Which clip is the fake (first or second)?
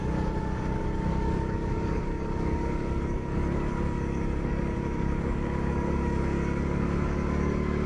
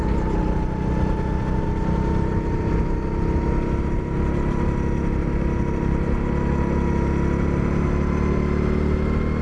first